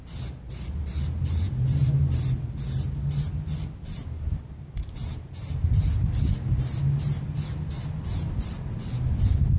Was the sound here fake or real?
real